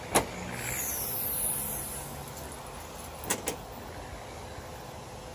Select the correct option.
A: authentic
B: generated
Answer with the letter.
A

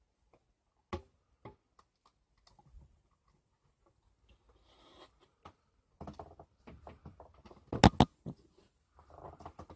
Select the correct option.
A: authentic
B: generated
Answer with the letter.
A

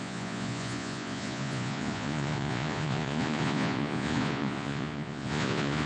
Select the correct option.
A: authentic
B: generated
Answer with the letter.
B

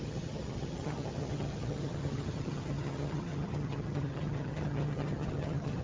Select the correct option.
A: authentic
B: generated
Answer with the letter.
B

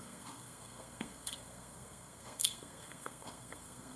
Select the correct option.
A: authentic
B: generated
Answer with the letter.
B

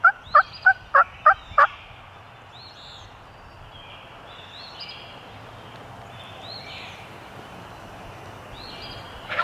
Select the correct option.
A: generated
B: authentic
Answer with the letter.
B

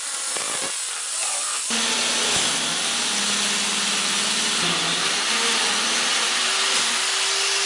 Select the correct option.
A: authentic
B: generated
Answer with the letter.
A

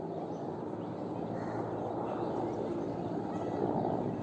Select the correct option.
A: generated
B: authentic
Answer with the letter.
B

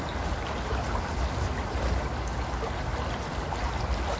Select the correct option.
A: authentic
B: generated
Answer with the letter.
A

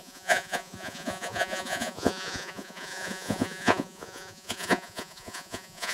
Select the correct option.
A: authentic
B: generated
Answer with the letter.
B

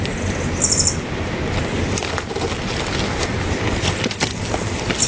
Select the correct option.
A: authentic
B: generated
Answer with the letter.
A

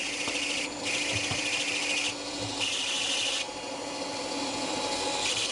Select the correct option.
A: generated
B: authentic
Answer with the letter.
B